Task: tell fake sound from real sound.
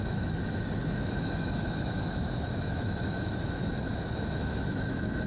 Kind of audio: fake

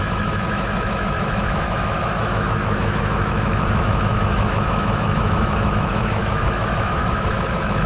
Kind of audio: fake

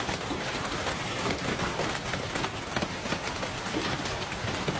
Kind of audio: real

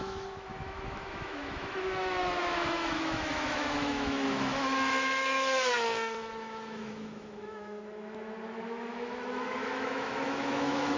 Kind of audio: fake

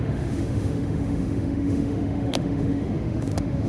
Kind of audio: fake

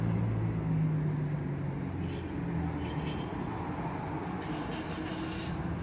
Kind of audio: real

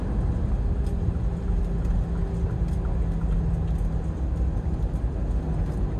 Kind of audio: real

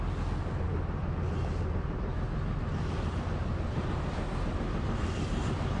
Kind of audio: real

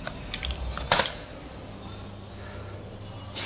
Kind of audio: real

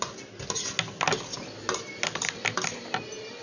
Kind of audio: real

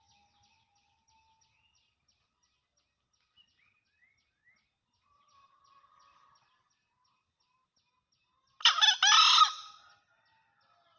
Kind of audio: real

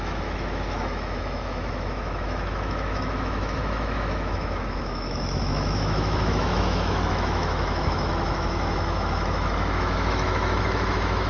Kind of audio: fake